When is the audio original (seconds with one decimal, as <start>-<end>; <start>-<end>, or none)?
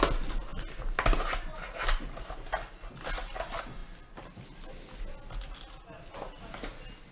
0.0-7.1